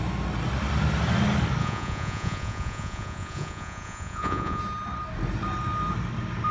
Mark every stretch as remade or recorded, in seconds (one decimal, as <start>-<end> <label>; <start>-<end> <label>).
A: 0.0-1.6 recorded; 1.6-4.6 remade; 4.6-6.5 recorded